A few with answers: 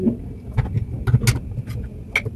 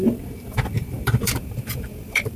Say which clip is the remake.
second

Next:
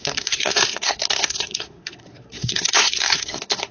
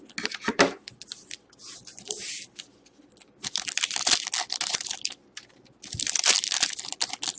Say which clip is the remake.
first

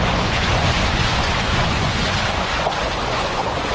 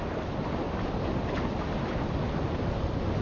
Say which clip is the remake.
first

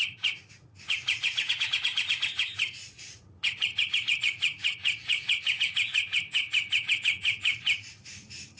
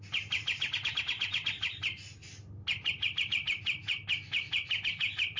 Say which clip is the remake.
first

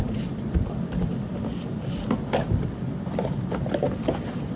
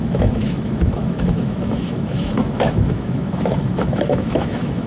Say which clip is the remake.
second